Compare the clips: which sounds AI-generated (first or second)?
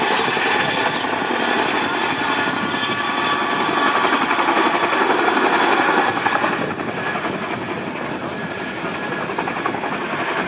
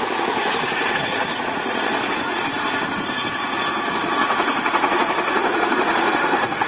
second